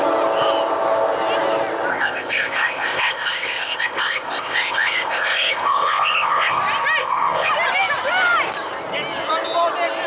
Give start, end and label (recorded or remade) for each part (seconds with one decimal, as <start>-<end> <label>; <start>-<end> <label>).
0.0-1.9 recorded; 1.9-6.6 remade; 6.6-7.0 recorded; 7.0-7.5 remade; 7.5-10.1 recorded